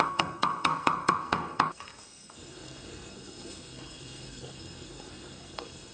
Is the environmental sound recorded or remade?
remade